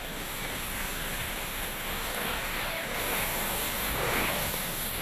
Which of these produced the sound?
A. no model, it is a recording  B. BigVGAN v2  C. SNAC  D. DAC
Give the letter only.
D